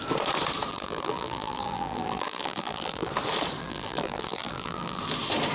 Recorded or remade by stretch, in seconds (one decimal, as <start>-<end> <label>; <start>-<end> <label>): 0.0-0.7 recorded; 0.7-3.1 remade; 3.1-3.6 recorded; 3.6-5.0 remade; 5.0-5.5 recorded